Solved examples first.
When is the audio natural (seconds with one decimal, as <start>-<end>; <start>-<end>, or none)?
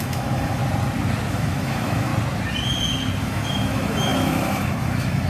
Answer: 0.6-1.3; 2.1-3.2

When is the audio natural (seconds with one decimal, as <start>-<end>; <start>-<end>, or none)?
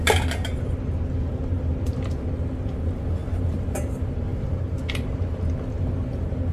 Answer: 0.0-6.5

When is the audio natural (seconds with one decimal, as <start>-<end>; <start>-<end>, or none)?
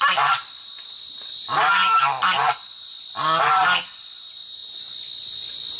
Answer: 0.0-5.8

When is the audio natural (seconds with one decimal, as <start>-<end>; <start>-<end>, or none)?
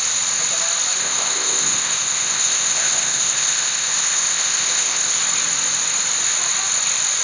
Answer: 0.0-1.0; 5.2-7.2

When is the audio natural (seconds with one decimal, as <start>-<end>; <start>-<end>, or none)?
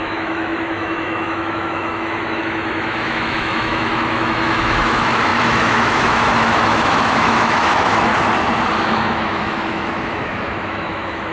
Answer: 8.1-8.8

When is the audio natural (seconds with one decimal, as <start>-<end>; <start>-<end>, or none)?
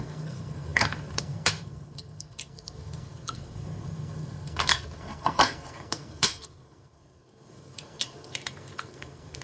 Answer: none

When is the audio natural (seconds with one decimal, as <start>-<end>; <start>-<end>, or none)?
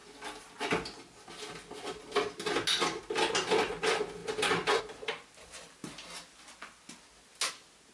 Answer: 0.0-7.9